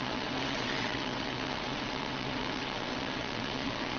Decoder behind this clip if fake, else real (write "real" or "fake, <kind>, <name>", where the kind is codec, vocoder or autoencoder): fake, vocoder, WaveNeXt